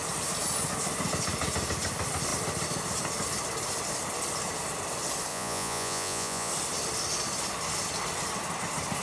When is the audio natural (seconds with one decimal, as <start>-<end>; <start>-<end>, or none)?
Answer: 0.0-5.3; 6.5-9.0

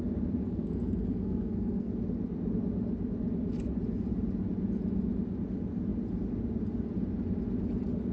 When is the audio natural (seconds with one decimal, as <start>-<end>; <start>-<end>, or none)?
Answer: 0.0-0.4; 1.9-8.1

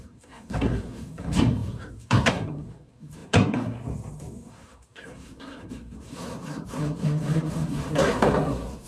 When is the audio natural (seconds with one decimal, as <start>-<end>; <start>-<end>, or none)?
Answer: none

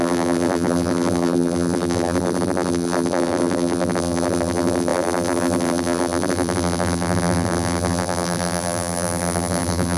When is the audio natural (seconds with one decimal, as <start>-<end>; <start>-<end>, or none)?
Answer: none

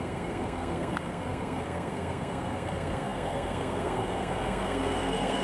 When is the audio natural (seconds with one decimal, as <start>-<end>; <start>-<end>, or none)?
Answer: none

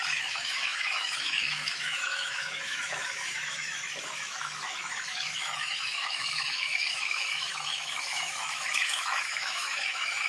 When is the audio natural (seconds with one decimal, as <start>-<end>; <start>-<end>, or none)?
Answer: none